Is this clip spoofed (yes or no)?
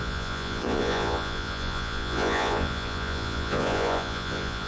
yes